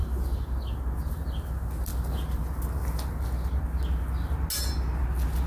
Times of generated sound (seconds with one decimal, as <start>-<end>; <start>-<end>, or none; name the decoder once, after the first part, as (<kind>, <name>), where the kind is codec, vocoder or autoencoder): 0.0-0.8 (vocoder, BigVGAN v2)